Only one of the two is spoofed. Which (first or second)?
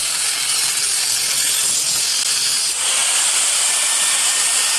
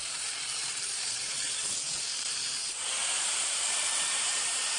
second